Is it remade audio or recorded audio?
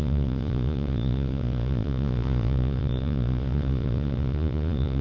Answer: remade